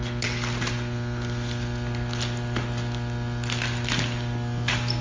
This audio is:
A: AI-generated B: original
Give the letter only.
B